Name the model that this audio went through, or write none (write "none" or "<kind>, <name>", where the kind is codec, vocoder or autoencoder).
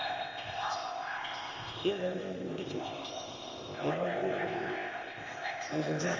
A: codec, ZipCodec